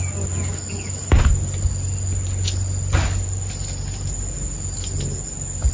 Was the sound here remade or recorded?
recorded